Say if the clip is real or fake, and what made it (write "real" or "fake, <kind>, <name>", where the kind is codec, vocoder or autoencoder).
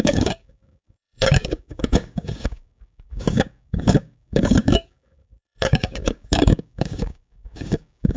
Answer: fake, codec, DAC